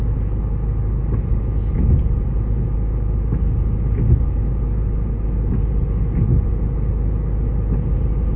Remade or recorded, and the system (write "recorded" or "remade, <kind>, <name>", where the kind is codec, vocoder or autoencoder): recorded